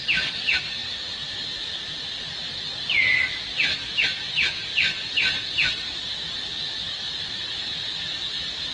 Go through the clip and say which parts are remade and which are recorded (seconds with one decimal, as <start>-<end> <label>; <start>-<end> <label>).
0.0-8.7 recorded